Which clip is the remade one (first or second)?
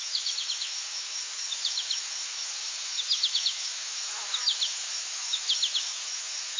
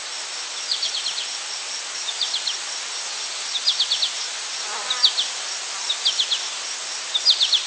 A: first